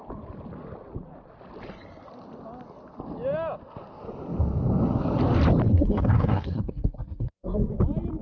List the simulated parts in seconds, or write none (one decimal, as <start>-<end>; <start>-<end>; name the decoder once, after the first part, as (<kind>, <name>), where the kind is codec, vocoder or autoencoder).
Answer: 5.7-7.7 (codec, SNAC)